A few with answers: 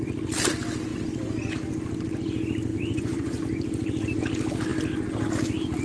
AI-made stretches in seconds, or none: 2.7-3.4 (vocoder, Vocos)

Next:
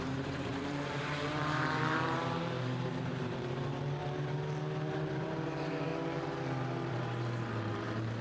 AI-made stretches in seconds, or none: 0.0-4.0 (vocoder, BigVGAN v2); 5.2-5.9; 6.9-8.2

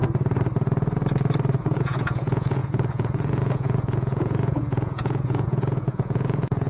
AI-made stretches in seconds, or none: 1.6-6.7 (vocoder, Vocos)

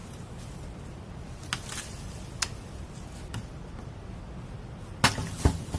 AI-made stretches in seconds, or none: none